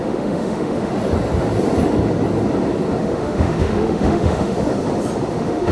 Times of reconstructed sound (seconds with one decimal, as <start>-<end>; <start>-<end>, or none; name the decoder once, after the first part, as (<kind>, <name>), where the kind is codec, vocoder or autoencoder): 0.0-0.9 (autoencoder, DAC-VAE); 3.0-4.7; 5.3-5.7